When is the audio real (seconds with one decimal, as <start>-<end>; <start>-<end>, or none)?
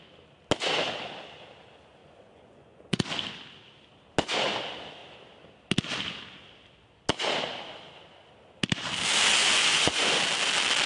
0.0-2.0; 3.1-9.4; 10.2-10.9